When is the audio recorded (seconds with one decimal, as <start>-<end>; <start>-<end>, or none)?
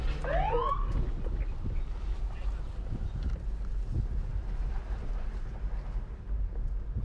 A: 0.0-7.0